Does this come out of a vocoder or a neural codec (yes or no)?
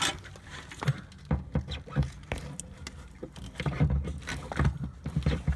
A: no